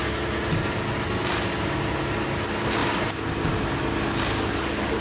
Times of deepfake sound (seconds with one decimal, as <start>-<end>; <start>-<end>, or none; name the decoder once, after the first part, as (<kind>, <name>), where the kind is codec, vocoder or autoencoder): none